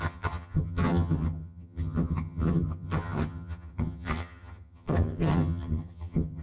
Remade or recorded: remade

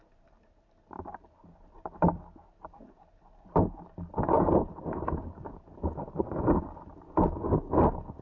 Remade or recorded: recorded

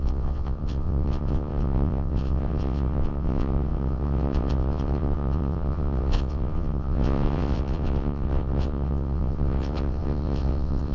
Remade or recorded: remade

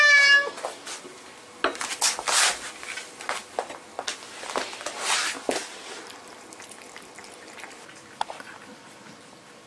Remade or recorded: recorded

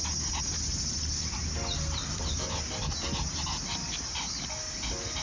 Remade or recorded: recorded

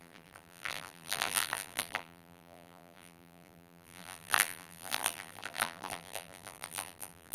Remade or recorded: remade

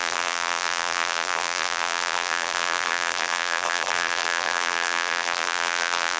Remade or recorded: remade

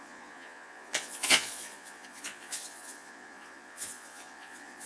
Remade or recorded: remade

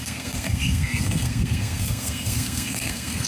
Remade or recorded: remade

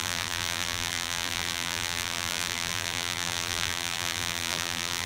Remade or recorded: remade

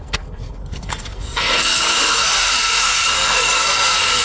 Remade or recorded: remade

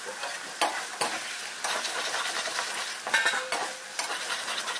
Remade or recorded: recorded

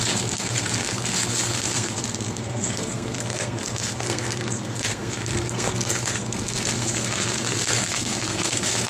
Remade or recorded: remade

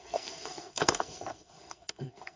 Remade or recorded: remade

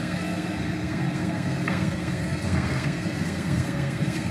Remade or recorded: remade